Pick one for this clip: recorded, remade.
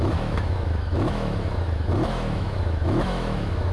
remade